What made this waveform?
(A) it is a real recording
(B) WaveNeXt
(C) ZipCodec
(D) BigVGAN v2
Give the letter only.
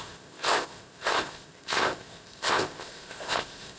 C